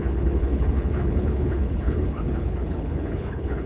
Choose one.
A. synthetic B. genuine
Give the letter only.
A